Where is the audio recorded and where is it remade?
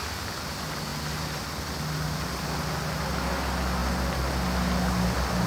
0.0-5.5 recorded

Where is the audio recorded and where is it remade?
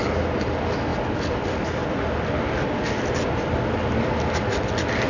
0.0-5.1 recorded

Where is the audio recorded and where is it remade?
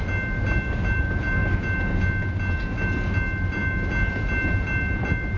0.0-5.4 recorded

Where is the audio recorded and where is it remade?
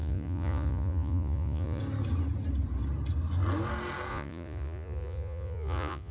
0.0-1.8 remade; 1.8-4.1 recorded; 4.1-6.1 remade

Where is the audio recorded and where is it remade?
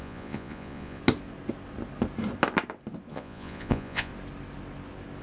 0.0-1.0 remade; 1.0-3.1 recorded; 3.1-4.1 remade; 4.1-5.2 recorded